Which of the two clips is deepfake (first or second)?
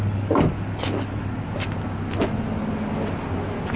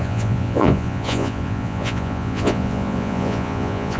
second